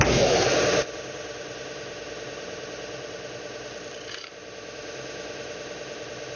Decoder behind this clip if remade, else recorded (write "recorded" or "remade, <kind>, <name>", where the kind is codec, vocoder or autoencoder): remade, vocoder, BigVGAN v2